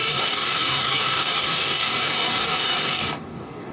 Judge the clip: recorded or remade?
remade